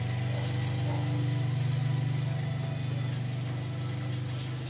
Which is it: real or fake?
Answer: real